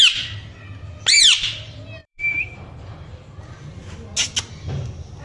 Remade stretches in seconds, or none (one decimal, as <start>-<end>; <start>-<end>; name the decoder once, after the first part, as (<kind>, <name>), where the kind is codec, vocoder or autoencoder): 2.0-3.8 (vocoder, BigVGAN v2)